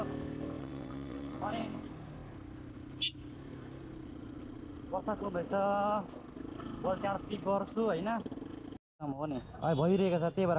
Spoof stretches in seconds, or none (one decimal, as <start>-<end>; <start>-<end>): 0.6-1.4